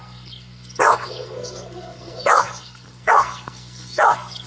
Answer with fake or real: fake